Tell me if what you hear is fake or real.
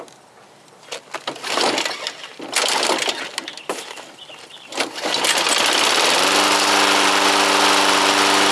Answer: real